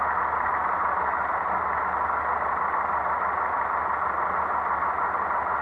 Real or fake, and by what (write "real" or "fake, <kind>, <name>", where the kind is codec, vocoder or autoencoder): real